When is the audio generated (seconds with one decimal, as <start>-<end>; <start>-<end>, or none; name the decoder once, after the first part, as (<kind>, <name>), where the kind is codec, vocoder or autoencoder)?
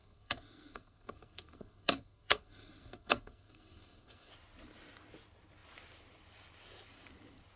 0.0-4.3 (codec, SNAC)